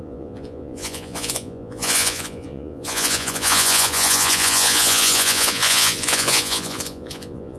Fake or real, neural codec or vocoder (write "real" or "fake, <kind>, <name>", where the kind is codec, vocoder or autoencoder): fake, vocoder, Vocos